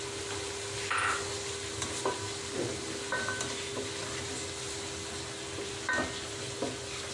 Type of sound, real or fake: real